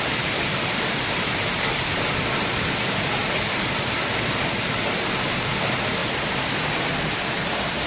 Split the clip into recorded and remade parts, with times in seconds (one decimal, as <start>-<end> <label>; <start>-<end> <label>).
0.0-6.0 recorded; 6.0-6.9 remade; 6.9-7.9 recorded